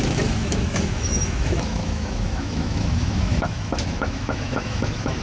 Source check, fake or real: fake